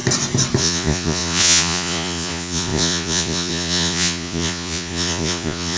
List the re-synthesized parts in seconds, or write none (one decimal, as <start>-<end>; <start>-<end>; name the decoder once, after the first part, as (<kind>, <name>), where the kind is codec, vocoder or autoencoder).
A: 0.6-5.8 (vocoder, Vocos)